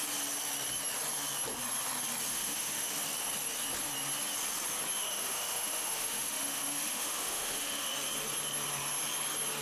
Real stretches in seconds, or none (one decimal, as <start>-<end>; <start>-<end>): 0.0-2.3; 2.9-5.0; 7.9-9.6